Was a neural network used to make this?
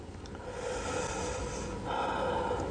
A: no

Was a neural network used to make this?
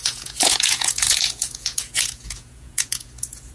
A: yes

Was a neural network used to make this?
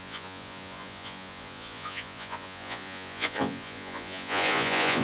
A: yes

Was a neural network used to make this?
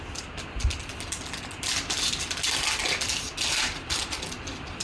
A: no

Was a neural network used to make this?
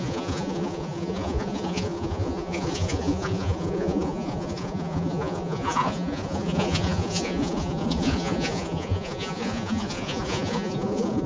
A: yes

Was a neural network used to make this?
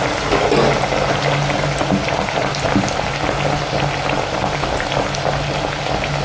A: no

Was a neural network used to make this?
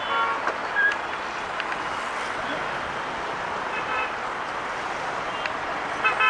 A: no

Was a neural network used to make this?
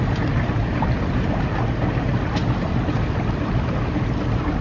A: no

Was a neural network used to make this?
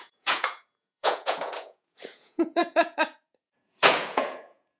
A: yes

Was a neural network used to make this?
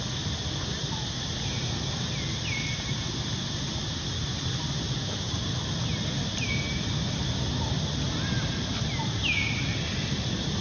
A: no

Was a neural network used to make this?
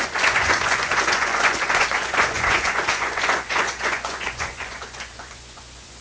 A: yes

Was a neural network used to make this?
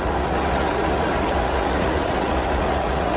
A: yes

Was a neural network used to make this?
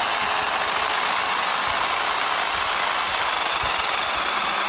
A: no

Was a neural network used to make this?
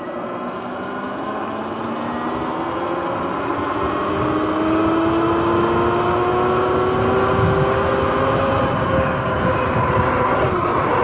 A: no